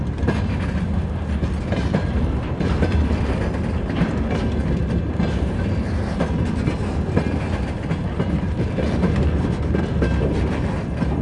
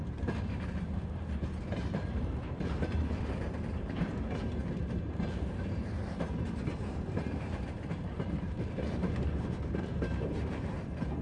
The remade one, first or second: second